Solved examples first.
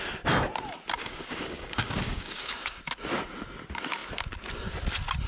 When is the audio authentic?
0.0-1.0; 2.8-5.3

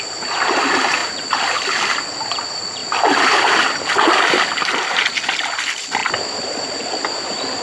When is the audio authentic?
0.0-7.6

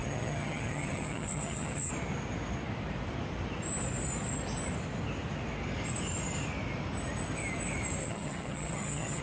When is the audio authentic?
1.9-8.0

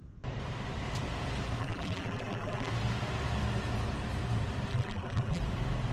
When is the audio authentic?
0.0-1.6; 2.7-4.7; 5.4-5.9

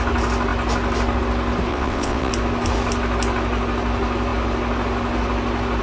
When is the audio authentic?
0.0-1.7; 2.3-5.8

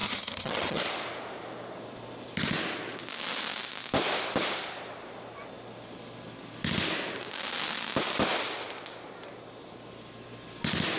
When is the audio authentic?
0.8-11.0

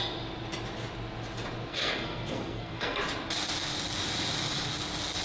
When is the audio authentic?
0.0-1.7; 3.0-5.2